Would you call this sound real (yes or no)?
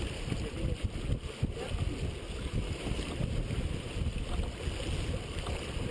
yes